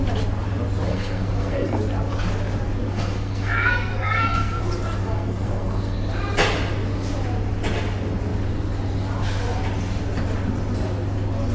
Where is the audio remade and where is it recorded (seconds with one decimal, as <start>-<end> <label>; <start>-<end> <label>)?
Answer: 0.0-0.9 recorded; 0.9-1.8 remade; 1.8-2.8 recorded; 2.8-4.6 remade; 4.6-5.0 recorded; 5.0-6.1 remade; 6.1-11.5 recorded